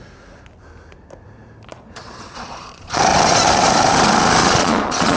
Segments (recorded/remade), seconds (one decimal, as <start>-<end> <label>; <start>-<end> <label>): 0.0-1.7 recorded; 1.7-3.0 remade; 3.0-4.4 recorded; 4.4-5.2 remade